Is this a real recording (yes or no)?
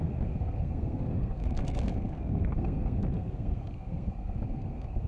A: no